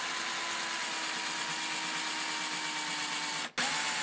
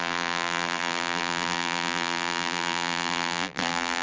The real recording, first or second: first